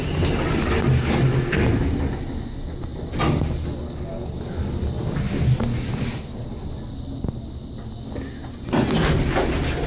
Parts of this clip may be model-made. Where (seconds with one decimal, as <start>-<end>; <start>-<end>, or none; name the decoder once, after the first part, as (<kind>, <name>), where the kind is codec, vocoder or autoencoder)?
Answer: none